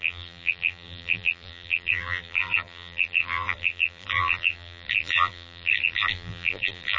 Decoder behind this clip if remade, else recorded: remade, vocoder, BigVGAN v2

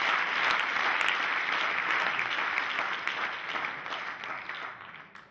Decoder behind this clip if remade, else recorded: recorded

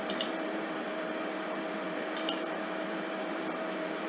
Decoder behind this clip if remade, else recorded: remade, vocoder, BigVGAN v2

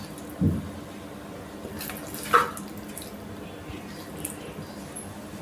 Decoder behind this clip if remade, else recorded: recorded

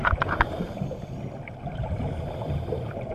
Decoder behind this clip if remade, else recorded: remade, vocoder, BigVGAN v2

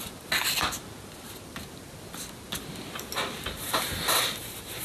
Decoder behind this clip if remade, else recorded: recorded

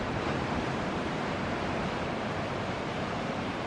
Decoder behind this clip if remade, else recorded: remade, vocoder, BigVGAN v2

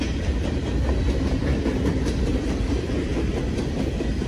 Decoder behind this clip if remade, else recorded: remade, vocoder, BigVGAN v2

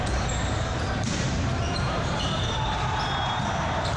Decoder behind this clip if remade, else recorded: remade, vocoder, BigVGAN v2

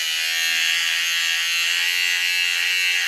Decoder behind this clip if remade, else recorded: recorded